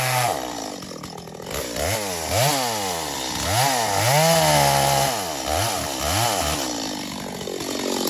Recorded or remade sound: recorded